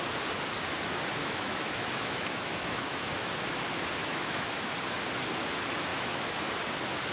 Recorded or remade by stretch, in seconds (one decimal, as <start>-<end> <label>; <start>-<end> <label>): 0.0-1.2 recorded; 1.2-3.3 remade; 3.3-4.0 recorded; 4.0-4.7 remade; 4.7-5.9 recorded; 5.9-6.5 remade; 6.5-7.1 recorded